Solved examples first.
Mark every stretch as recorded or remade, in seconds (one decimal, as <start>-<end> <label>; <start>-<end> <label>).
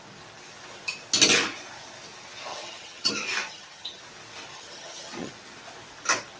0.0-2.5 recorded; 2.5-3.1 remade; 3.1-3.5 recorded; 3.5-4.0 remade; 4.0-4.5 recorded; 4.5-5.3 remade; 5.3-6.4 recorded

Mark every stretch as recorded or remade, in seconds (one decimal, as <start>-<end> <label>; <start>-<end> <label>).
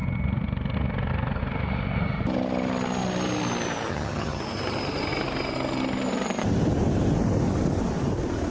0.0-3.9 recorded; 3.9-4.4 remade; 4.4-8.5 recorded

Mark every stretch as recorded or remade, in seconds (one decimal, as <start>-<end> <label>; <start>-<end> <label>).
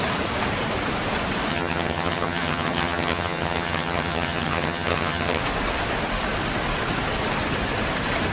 0.0-1.5 recorded; 1.5-5.4 remade; 5.4-8.3 recorded